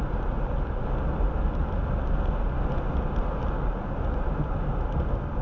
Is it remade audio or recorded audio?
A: recorded